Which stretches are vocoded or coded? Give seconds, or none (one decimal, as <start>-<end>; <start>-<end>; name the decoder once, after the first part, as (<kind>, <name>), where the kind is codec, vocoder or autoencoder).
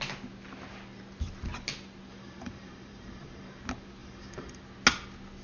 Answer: 2.1-3.6 (vocoder, BigVGAN v2); 4.0-4.6